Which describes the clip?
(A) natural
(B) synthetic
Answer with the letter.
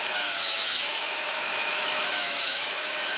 B